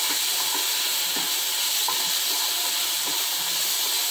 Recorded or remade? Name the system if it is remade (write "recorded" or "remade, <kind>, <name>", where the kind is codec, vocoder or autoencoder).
recorded